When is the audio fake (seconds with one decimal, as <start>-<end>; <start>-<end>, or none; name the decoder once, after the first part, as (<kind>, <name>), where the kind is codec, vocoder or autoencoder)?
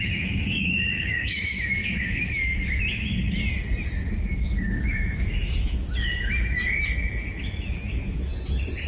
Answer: 0.0-1.8 (autoencoder, DAC-VAE); 4.8-8.3